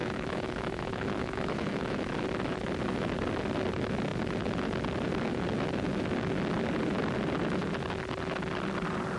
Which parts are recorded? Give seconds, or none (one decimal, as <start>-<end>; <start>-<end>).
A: 2.1-9.2